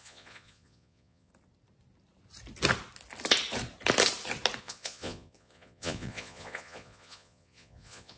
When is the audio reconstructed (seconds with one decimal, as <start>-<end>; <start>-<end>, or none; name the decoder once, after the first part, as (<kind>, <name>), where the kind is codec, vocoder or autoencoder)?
0.0-1.3 (vocoder, Vocos); 4.6-8.2